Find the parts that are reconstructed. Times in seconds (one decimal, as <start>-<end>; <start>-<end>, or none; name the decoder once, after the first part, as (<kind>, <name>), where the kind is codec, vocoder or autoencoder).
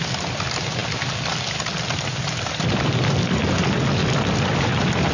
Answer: none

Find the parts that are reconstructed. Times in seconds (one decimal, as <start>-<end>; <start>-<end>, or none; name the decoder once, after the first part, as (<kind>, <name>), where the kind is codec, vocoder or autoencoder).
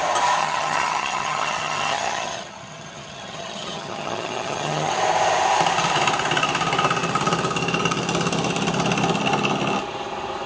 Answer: 0.4-4.9 (vocoder, HiFi-GAN)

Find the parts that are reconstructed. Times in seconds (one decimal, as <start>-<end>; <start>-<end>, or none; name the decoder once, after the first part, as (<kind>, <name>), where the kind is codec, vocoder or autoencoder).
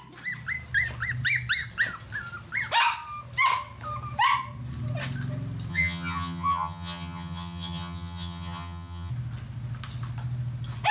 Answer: 5.7-9.1 (vocoder, HiFi-GAN)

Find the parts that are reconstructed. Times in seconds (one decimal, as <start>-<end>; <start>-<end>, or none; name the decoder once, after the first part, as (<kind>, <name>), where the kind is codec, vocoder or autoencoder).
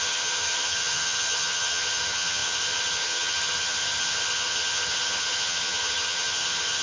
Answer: 0.0-6.8 (vocoder, HiFi-GAN)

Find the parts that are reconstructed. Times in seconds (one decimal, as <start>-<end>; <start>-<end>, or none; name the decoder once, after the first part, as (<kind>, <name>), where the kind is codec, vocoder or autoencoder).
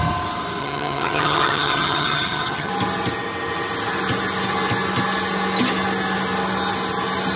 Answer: 0.6-2.7 (vocoder, HiFi-GAN)